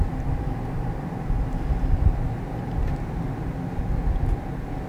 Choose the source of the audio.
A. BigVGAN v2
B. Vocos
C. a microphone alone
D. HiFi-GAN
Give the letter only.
C